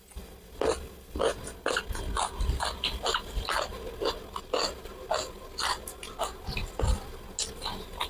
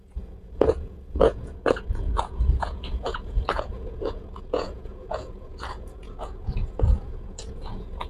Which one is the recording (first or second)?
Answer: first